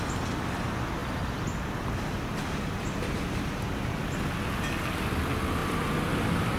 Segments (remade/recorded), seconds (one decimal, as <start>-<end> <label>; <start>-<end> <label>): 0.0-6.6 recorded